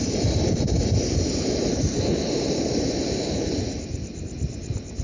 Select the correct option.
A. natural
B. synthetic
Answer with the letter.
A